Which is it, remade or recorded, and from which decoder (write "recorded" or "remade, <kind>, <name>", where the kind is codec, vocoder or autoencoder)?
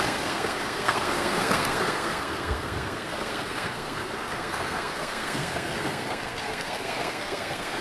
remade, codec, SNAC